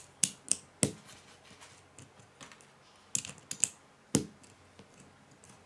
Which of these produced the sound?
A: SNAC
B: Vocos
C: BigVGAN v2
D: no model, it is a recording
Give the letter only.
D